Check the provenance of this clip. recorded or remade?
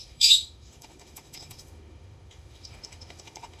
remade